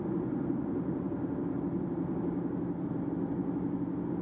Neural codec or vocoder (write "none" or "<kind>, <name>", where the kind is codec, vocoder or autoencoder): none